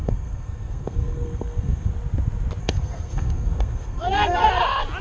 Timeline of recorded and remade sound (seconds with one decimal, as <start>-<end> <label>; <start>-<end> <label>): 0.0-1.9 remade; 1.9-2.6 recorded; 2.6-4.5 remade; 4.5-5.0 recorded